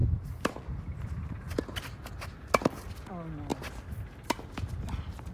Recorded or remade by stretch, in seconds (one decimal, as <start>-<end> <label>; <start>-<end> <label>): 0.0-1.5 remade; 1.5-5.3 recorded